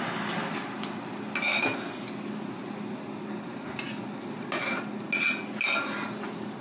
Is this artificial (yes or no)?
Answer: no